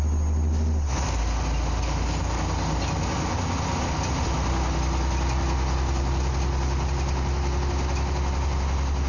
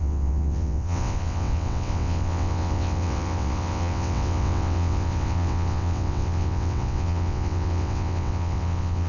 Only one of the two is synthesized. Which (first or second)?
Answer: second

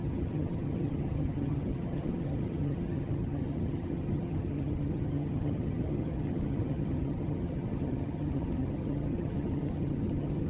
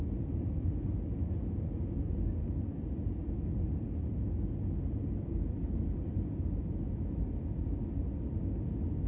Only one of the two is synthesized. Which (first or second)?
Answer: first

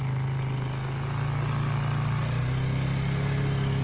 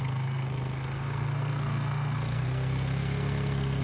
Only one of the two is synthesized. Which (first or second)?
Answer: second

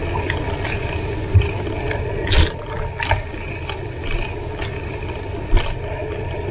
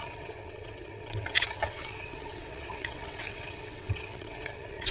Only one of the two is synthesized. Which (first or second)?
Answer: second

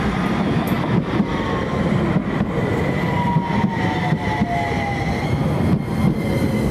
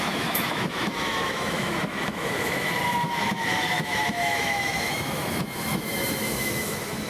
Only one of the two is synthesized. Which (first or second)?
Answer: second